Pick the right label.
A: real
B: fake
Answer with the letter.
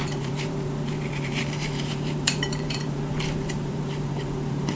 B